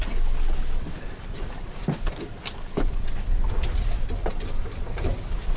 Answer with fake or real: real